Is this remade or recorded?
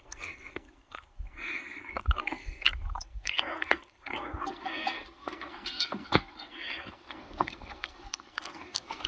remade